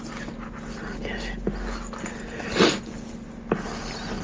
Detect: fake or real real